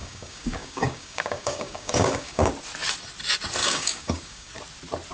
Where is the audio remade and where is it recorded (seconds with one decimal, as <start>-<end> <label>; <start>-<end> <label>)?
0.0-2.5 remade; 2.5-3.6 recorded; 3.6-4.5 remade; 4.5-5.1 recorded